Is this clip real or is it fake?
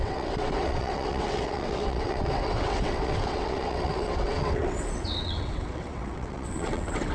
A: fake